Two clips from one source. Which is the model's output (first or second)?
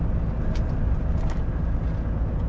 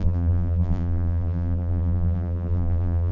second